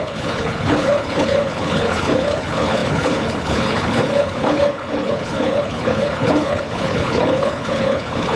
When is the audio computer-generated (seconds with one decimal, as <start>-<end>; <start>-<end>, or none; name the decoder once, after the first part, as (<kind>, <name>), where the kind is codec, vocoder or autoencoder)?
0.0-8.4 (codec, HILCodec)